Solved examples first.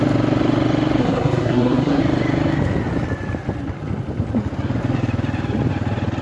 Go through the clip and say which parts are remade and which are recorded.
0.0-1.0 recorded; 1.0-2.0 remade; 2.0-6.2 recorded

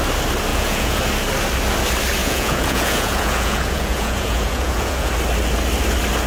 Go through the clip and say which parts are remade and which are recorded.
0.0-0.5 recorded; 0.5-1.0 remade; 1.0-2.2 recorded; 2.2-5.1 remade; 5.1-6.3 recorded

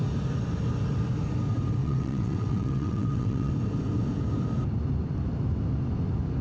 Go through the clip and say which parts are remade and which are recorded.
0.0-1.8 recorded; 1.8-3.5 remade; 3.5-6.4 recorded

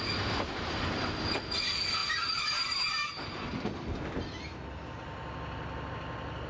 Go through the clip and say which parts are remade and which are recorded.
0.0-6.5 recorded

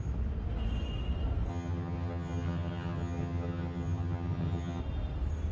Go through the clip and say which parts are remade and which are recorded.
0.0-1.5 recorded; 1.5-4.8 remade; 4.8-5.5 recorded

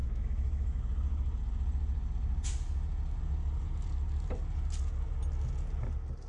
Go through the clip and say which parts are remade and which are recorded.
0.0-0.8 remade; 0.8-6.3 recorded